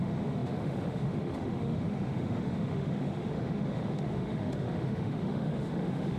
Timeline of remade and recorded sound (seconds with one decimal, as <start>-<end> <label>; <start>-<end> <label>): 0.0-6.2 remade